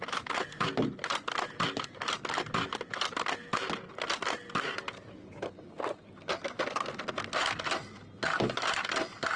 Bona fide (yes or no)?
yes